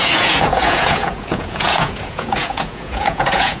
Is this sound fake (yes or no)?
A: yes